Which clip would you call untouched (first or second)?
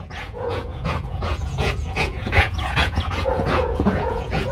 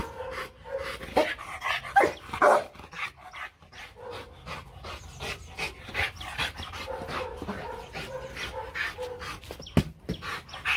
second